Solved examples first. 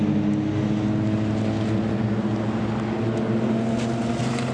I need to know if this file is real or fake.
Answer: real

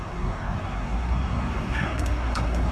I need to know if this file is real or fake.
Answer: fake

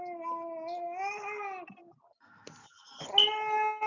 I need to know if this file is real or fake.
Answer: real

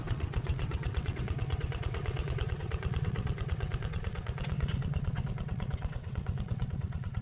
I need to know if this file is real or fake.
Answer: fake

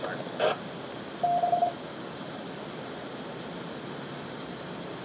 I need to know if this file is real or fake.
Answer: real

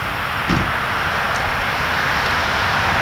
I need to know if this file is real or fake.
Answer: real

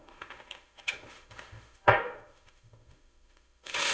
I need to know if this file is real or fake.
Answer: fake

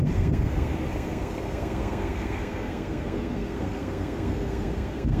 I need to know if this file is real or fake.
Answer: fake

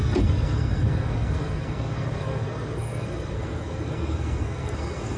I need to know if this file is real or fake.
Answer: fake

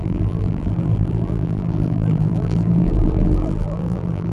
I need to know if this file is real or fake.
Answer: fake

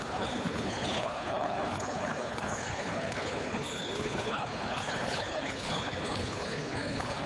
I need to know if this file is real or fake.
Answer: fake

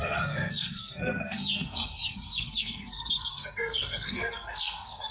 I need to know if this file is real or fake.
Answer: fake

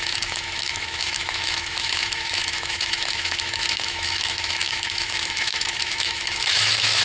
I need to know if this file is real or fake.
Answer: fake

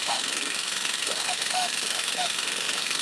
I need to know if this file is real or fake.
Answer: fake